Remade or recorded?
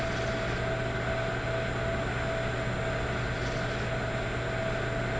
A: recorded